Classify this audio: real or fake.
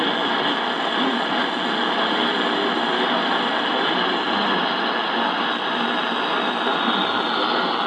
real